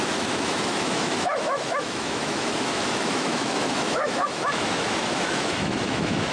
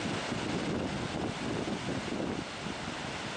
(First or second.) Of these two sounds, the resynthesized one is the first